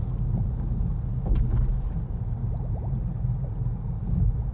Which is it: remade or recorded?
recorded